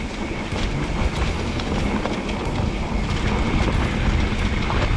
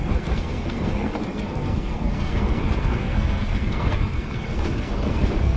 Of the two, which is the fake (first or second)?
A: second